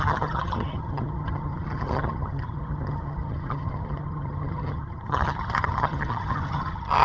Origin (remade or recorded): remade